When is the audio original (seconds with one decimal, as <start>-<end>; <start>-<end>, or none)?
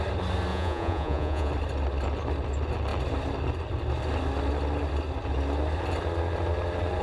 0.0-0.5; 1.5-7.0